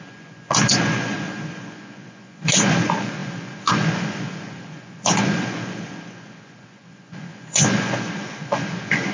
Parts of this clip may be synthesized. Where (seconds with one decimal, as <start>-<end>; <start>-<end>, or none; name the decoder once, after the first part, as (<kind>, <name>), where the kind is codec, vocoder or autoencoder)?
0.0-9.1 (vocoder, Vocos)